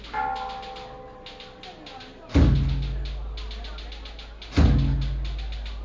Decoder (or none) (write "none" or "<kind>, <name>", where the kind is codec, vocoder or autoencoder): none